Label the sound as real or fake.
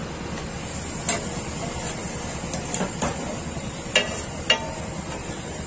real